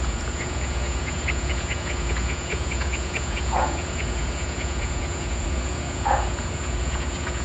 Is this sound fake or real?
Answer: fake